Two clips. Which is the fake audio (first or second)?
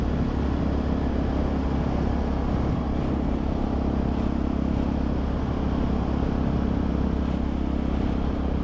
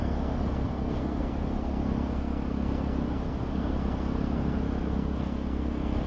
second